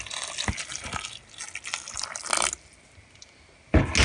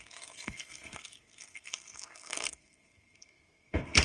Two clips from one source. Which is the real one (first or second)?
first